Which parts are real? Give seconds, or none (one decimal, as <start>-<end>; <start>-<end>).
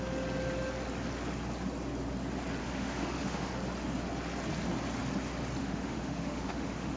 0.0-2.6; 3.5-5.6